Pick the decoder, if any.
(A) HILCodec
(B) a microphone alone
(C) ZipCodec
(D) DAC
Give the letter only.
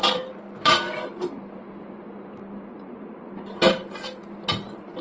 B